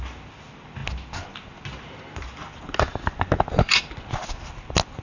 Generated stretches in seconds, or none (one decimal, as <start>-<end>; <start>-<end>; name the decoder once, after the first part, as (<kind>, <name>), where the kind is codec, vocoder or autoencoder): none